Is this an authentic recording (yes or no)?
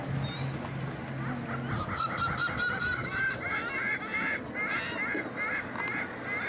yes